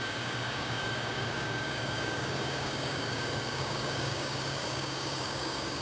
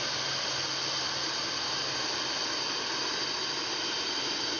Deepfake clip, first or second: first